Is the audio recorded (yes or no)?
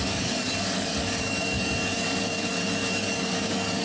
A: no